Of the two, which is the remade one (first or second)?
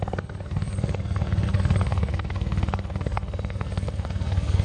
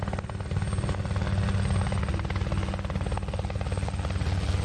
first